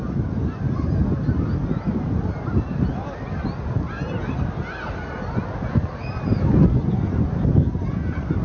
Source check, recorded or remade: recorded